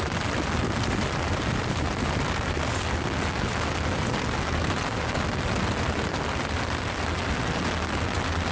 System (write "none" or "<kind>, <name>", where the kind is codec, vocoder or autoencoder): none